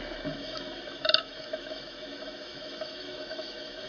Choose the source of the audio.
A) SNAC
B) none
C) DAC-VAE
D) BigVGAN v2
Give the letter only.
C